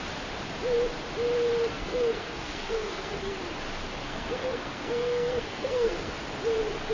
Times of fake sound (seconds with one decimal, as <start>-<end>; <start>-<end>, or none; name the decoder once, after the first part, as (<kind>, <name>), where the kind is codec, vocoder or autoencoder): 1.7-3.4 (codec, SNAC); 4.0-6.1